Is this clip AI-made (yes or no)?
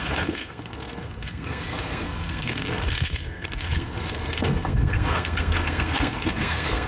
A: yes